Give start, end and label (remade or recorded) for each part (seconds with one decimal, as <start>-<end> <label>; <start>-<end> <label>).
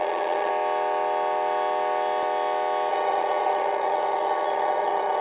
0.0-0.5 remade; 0.5-2.9 recorded; 2.9-5.2 remade